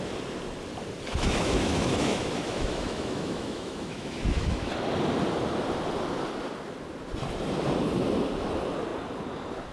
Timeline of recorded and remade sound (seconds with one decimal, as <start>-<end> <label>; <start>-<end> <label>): 0.0-1.1 recorded; 1.1-4.7 remade; 4.7-9.7 recorded